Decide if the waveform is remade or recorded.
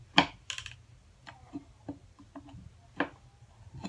recorded